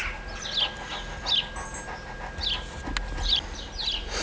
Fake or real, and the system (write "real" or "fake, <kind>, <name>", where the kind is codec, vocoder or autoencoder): real